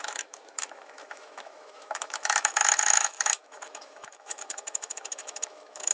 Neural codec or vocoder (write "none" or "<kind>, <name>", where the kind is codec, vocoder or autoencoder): autoencoder, DAC-VAE